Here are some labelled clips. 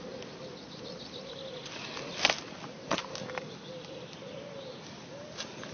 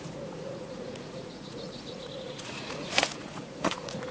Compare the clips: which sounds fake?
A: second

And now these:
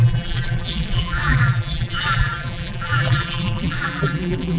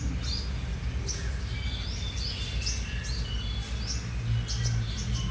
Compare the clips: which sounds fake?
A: first